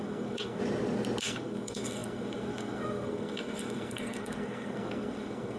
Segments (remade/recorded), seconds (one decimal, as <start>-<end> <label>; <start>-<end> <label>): 0.0-0.6 remade; 0.6-1.2 recorded; 1.2-5.6 remade